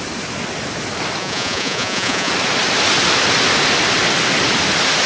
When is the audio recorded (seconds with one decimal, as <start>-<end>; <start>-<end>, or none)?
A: 0.0-1.2; 2.3-5.1